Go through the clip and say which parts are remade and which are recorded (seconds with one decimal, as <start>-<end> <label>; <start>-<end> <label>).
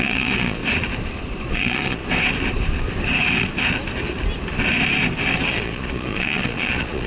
0.0-0.6 remade; 0.6-1.5 recorded; 1.5-2.0 remade; 2.0-5.5 recorded; 5.5-7.1 remade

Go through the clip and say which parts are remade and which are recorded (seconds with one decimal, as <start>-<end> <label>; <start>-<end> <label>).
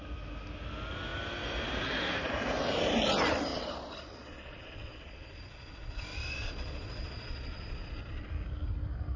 0.0-3.5 recorded; 3.5-8.3 remade; 8.3-9.2 recorded